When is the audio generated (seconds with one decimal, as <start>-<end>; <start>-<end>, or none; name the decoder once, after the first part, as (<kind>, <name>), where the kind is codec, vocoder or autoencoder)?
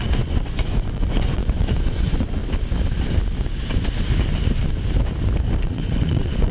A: 0.0-2.4 (vocoder, Vocos); 5.6-6.5